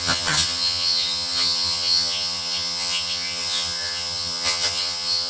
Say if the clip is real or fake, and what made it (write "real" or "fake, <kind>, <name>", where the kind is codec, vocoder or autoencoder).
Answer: fake, vocoder, HiFi-GAN